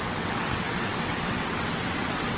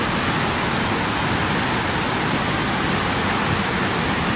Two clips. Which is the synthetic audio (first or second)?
first